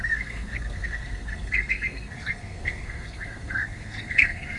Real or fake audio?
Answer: fake